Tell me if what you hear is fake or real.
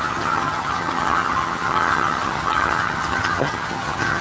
fake